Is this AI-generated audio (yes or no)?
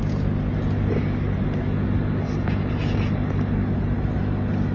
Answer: no